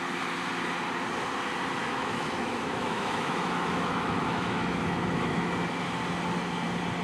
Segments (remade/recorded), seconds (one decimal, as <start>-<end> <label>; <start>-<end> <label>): 0.0-1.8 recorded; 1.8-5.5 remade; 5.5-7.0 recorded

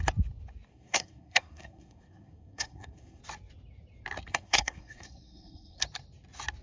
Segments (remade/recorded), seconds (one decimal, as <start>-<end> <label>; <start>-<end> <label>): 0.0-0.7 recorded; 0.7-3.2 remade; 3.2-4.3 recorded; 4.3-5.8 remade; 5.8-6.6 recorded

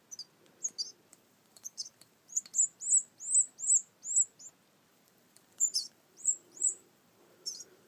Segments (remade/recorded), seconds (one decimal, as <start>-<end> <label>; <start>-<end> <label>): 0.0-1.1 recorded; 1.1-2.4 remade; 2.4-4.9 recorded; 4.9-7.9 remade

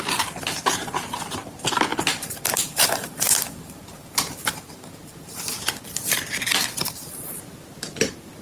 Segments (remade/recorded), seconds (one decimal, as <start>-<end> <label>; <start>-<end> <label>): 0.0-1.9 recorded; 1.9-5.4 remade; 5.4-6.8 recorded; 6.8-7.3 remade; 7.3-8.4 recorded

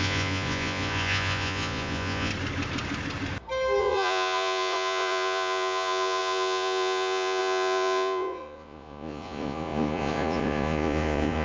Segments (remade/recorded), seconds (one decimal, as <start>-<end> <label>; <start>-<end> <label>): 0.0-2.3 remade; 2.3-3.8 recorded; 3.8-11.4 remade

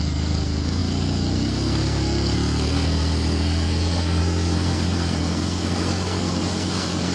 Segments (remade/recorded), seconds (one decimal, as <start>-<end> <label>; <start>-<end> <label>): 0.0-7.1 remade

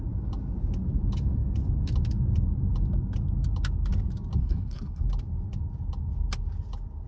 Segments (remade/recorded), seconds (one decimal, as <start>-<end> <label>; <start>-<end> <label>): 0.0-4.4 recorded; 4.4-5.0 remade; 5.0-7.1 recorded